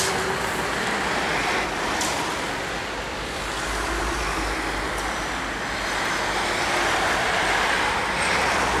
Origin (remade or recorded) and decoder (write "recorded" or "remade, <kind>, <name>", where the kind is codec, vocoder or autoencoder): recorded